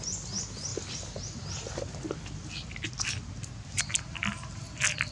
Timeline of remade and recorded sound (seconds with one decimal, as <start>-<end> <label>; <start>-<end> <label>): 0.0-5.1 recorded